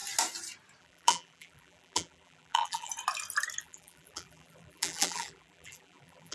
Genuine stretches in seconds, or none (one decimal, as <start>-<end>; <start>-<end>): 0.0-0.8; 2.9-3.6